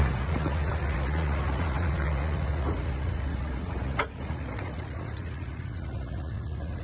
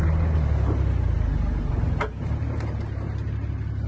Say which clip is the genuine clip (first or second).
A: second